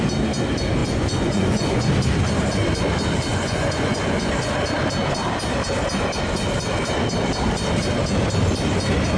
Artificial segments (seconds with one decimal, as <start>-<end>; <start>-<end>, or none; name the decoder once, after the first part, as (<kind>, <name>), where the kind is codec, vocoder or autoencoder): 0.8-1.9 (vocoder, Vocos); 3.3-4.3